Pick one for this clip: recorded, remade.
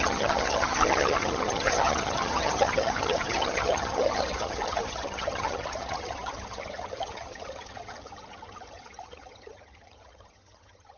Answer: remade